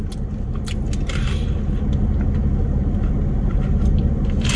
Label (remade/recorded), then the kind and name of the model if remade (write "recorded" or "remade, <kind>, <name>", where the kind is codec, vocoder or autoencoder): recorded